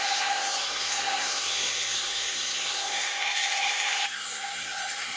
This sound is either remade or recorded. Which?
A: remade